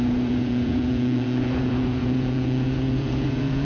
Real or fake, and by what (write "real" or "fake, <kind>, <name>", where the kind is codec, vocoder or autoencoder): fake, vocoder, Vocos